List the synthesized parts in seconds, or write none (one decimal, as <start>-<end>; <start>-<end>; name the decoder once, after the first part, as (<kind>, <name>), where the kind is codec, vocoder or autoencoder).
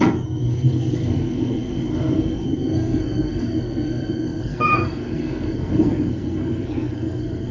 0.0-7.5 (codec, SNAC)